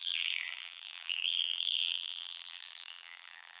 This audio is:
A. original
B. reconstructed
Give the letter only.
B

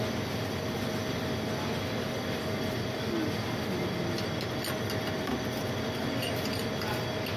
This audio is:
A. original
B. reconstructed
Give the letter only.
A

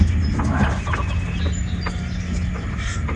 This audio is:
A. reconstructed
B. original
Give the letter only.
B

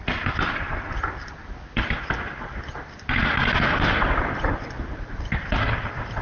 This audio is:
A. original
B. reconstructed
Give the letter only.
A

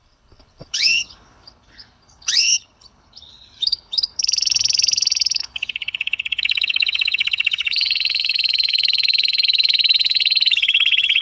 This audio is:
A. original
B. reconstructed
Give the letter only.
B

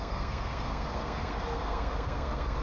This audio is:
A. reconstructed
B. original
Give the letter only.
A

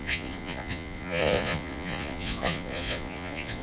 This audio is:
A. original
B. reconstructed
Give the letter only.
B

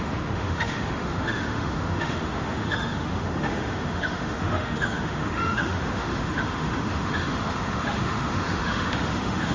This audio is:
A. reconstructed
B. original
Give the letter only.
A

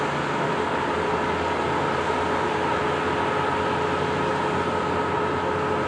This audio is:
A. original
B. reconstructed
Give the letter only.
A